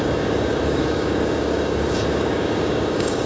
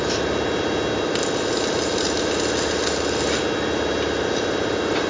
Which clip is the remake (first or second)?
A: first